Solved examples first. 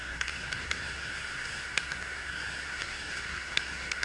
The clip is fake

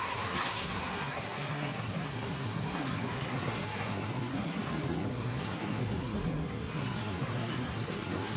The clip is fake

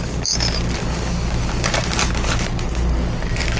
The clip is real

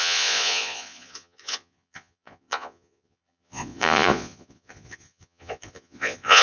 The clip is fake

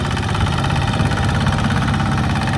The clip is real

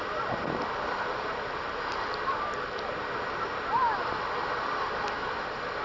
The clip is real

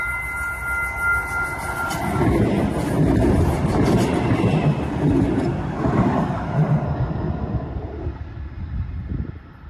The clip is real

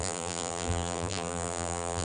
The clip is fake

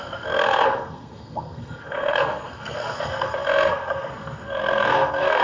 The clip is fake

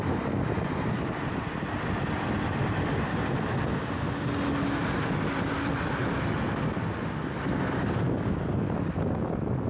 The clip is real